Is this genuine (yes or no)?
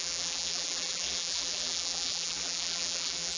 no